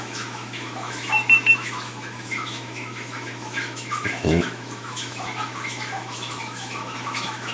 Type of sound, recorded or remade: remade